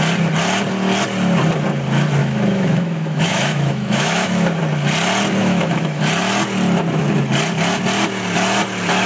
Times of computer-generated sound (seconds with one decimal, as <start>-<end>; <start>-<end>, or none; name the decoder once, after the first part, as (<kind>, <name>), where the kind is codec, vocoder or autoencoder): 2.2-4.6 (autoencoder, DAC-VAE); 5.4-6.0

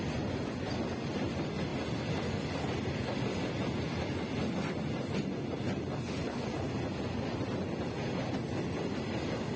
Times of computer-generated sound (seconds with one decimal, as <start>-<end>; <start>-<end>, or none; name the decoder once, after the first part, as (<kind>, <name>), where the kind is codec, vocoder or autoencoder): none

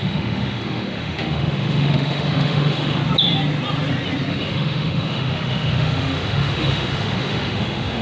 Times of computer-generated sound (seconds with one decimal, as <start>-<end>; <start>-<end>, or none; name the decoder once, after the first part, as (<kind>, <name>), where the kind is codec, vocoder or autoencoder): 0.0-3.0 (autoencoder, DAC-VAE); 4.3-8.0

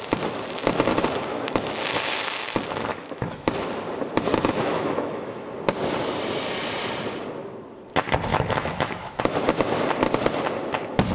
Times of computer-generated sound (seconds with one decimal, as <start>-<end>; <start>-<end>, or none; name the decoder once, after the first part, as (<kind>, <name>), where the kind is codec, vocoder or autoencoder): 1.3-1.8 (autoencoder, DAC-VAE); 2.9-3.5; 4.3-5.5; 8.3-9.2

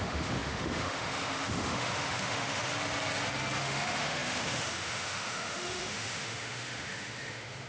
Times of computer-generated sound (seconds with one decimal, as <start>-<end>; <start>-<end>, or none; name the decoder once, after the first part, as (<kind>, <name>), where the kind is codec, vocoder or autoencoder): 0.0-2.7 (autoencoder, DAC-VAE); 3.6-7.7

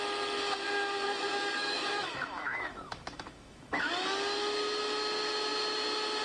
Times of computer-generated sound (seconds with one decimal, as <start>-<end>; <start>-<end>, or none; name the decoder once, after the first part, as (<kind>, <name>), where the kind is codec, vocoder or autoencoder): 1.1-3.9 (autoencoder, DAC-VAE)

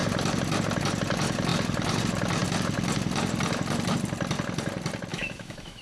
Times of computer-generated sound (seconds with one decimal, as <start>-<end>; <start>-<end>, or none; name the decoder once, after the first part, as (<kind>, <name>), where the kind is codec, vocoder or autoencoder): 5.1-5.8 (autoencoder, DAC-VAE)

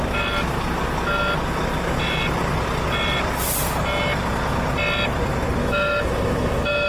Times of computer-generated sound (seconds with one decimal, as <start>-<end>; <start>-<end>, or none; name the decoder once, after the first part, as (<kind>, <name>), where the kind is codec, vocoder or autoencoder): 5.6-6.9 (autoencoder, DAC-VAE)